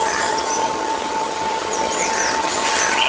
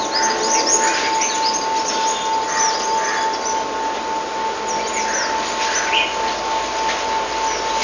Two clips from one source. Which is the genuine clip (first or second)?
second